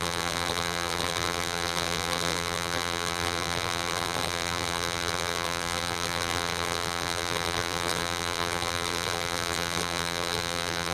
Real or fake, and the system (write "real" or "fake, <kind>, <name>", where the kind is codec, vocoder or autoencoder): fake, vocoder, BigVGAN v2